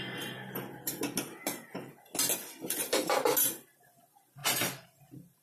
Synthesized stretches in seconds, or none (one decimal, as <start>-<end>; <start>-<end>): none